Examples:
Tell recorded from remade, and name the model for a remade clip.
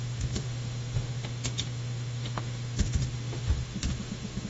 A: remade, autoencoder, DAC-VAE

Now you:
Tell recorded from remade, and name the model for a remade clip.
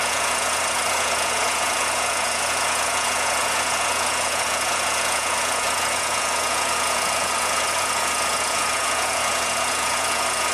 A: remade, vocoder, Vocos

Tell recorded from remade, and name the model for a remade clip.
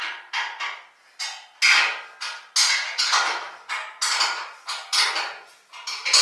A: recorded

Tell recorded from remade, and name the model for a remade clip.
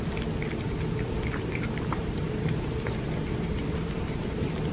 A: recorded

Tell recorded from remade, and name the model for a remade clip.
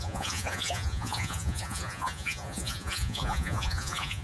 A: remade, vocoder, Vocos